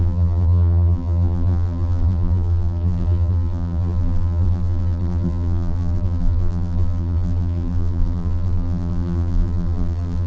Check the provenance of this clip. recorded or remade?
remade